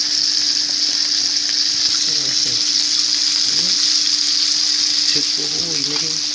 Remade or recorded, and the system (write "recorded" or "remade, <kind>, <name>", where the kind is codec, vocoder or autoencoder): recorded